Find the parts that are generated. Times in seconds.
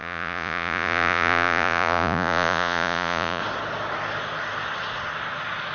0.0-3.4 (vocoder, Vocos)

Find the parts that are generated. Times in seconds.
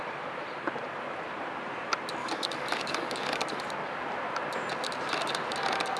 2.2-3.6 (codec, DAC)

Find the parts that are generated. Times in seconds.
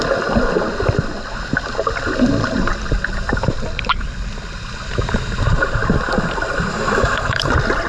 6.7-7.5 (autoencoder, DAC-VAE)